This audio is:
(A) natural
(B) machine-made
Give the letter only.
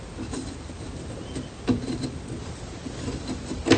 A